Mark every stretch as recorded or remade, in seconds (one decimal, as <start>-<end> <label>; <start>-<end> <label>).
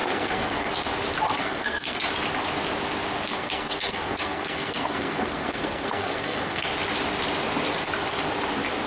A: 0.0-0.7 remade; 0.7-1.4 recorded; 1.4-2.0 remade; 2.0-3.3 recorded; 3.3-6.7 remade; 6.7-8.9 recorded